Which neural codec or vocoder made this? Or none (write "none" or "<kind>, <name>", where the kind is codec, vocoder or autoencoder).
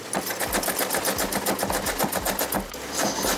none